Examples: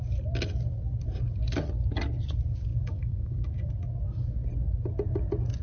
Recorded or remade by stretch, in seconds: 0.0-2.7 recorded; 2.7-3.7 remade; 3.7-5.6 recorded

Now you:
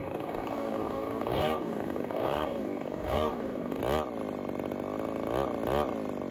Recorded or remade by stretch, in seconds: 0.0-3.8 remade; 3.8-6.3 recorded

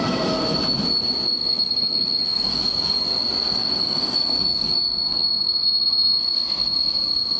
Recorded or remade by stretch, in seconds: 0.0-1.4 recorded; 1.4-2.6 remade; 2.6-3.6 recorded; 3.6-6.3 remade; 6.3-7.4 recorded

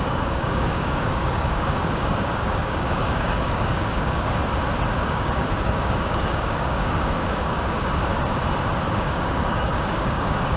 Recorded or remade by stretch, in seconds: 0.0-4.4 remade; 4.4-5.0 recorded; 5.0-8.1 remade; 8.1-8.9 recorded; 8.9-10.6 remade

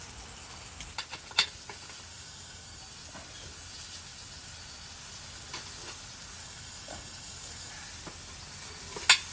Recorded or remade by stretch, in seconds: 0.0-2.1 recorded; 2.1-2.8 remade; 2.8-6.4 recorded; 6.4-7.7 remade; 7.7-9.3 recorded

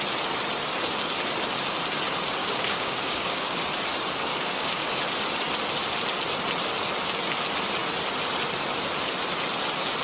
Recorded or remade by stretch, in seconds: 0.0-2.4 recorded; 2.4-3.6 remade; 3.6-4.3 recorded; 4.3-5.0 remade; 5.0-10.0 recorded

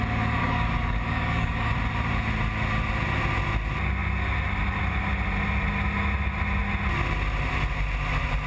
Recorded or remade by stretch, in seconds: 0.0-0.4 recorded; 0.4-1.7 remade; 1.7-8.5 recorded